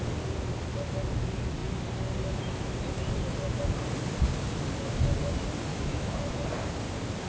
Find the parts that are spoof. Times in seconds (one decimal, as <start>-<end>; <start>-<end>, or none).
5.7-6.3